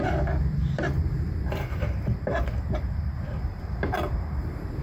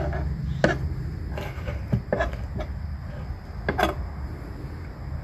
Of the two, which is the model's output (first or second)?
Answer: first